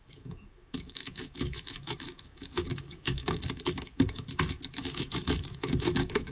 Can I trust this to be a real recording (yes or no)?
no